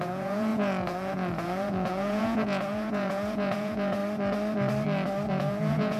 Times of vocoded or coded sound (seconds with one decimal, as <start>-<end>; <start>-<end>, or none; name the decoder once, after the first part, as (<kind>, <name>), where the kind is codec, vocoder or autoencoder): 0.0-4.0 (vocoder, Vocos); 5.3-6.0